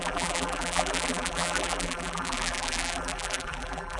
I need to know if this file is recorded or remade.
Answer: remade